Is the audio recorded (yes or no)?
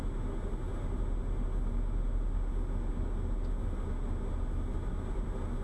yes